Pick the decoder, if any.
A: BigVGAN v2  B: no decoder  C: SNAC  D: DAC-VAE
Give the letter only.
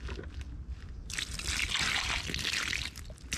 B